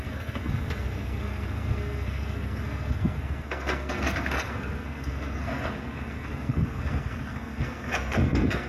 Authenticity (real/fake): fake